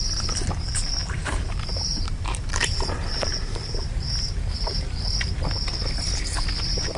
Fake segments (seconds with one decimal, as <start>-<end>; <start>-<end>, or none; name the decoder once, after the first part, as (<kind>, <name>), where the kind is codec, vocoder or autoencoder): 1.0-5.2 (vocoder, BigVGAN v2)